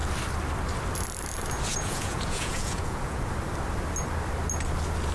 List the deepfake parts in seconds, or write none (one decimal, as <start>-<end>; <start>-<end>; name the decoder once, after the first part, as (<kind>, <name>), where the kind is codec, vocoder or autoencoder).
1.7-3.2 (vocoder, Vocos)